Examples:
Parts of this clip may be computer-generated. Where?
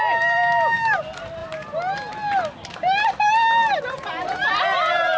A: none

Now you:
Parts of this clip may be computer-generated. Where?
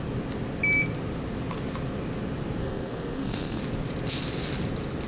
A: 2.6-3.6 (codec, SNAC)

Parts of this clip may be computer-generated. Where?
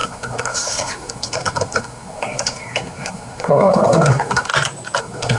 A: 0.0-4.5 (codec, SNAC); 5.0-5.4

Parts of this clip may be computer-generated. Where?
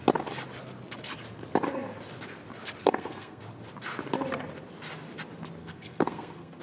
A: 2.8-3.4 (codec, SNAC); 5.6-6.6